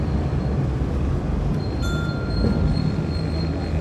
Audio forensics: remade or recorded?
recorded